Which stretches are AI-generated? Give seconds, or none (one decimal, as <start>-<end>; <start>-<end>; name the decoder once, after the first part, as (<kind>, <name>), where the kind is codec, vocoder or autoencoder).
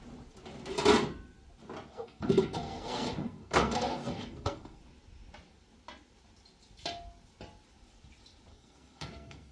1.9-4.8 (codec, SNAC); 8.5-9.5